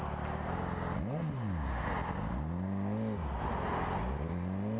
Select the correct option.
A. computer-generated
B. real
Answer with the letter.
B